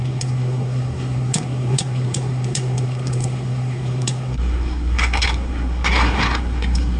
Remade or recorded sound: remade